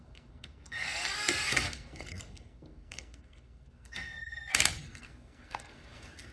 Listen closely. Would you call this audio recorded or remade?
remade